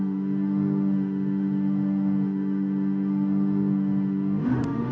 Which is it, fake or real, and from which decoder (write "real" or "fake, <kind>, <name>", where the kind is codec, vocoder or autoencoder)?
fake, autoencoder, DAC-VAE